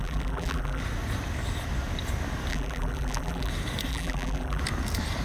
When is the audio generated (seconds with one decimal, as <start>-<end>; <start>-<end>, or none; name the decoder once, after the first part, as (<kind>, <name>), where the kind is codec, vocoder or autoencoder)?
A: 0.0-0.8 (vocoder, BigVGAN v2); 2.5-3.5; 3.9-4.6